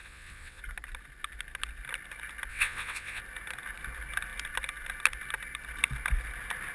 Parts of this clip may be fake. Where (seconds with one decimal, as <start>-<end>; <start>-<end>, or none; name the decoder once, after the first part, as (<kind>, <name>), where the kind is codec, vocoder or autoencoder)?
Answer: 0.0-0.6 (vocoder, WaveNeXt); 2.5-3.2